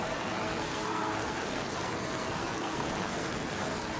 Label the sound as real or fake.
fake